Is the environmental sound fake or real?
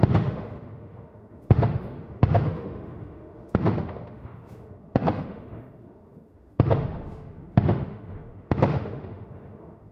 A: fake